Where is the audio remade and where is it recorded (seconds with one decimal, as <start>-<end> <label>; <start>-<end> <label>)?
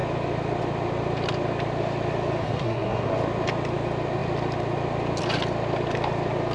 0.0-2.4 recorded; 2.4-3.1 remade; 3.1-6.5 recorded